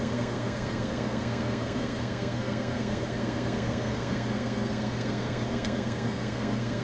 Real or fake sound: fake